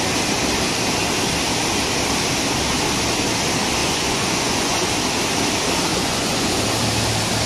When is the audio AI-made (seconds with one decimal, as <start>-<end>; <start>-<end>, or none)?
3.8-4.9; 5.9-6.6